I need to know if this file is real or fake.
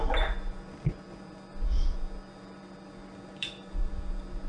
real